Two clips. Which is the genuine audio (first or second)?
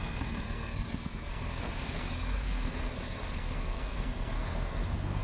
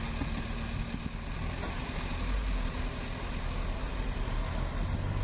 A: second